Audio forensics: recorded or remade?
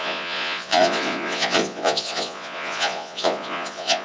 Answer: remade